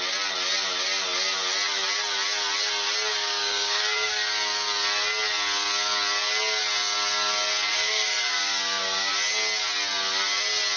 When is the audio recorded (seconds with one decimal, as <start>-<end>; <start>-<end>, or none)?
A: 0.0-3.1; 4.4-7.7; 9.1-10.8